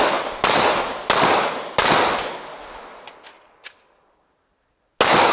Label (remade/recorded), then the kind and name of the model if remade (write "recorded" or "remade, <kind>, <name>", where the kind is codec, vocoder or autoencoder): recorded